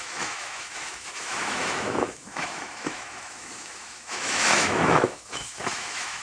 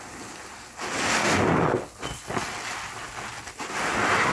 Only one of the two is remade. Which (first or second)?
first